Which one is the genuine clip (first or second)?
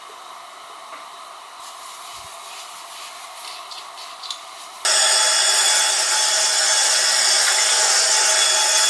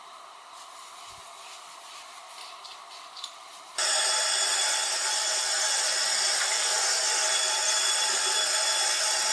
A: first